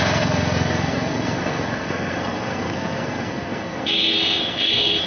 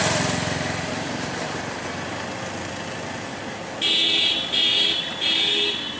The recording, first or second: second